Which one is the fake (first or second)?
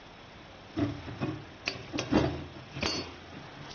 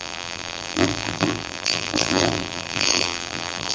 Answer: second